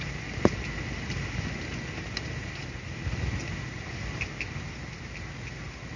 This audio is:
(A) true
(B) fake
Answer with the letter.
A